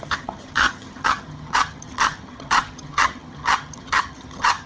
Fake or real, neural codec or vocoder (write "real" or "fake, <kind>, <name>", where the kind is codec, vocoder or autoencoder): fake, vocoder, HiFi-GAN